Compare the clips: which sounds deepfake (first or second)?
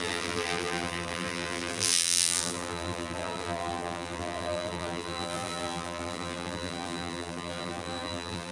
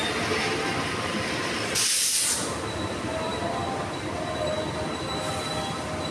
first